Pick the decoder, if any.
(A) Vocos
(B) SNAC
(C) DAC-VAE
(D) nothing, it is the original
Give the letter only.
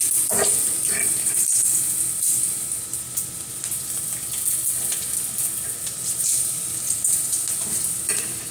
D